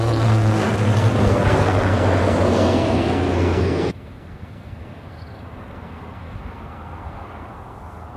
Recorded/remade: remade